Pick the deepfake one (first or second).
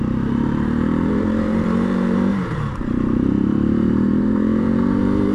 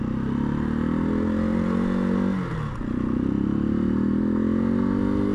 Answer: first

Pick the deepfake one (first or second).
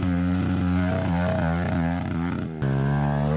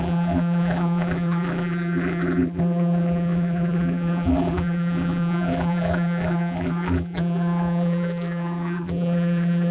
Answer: second